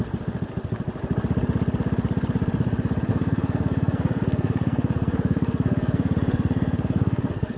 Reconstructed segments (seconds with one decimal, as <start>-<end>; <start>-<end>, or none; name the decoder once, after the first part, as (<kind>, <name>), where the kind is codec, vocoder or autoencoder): 3.1-7.6 (codec, SNAC)

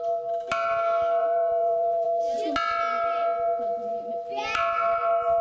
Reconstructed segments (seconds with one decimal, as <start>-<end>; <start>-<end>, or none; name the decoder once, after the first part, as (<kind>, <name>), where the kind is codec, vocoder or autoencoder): 1.2-2.2 (vocoder, Vocos)

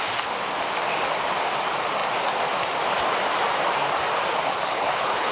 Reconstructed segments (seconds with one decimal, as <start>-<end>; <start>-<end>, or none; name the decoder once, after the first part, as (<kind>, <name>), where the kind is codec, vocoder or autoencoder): 4.5-5.3 (codec, HILCodec)